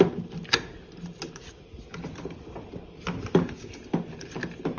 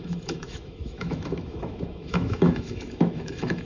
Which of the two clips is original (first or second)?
first